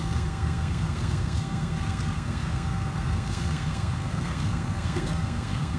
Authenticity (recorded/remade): remade